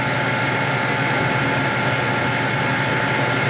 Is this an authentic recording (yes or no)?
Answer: yes